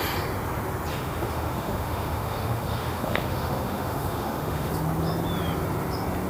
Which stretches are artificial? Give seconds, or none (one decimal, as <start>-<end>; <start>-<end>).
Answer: 0.9-4.7